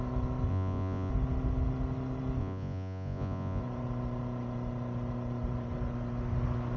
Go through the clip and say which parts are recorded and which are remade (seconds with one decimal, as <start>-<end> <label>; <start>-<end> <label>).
0.0-0.5 recorded; 0.5-1.1 remade; 1.1-2.4 recorded; 2.4-3.6 remade; 3.6-6.8 recorded